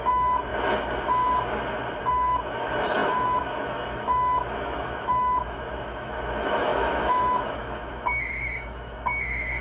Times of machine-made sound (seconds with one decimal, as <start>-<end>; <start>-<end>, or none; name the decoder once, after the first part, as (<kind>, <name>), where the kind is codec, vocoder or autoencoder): 0.0-0.5 (autoencoder, DAC-VAE); 2.0-9.6